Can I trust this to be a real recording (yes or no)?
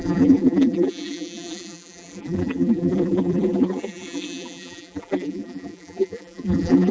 no